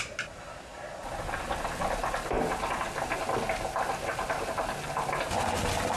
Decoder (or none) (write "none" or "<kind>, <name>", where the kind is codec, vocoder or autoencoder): none